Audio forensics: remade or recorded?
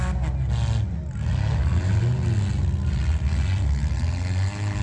recorded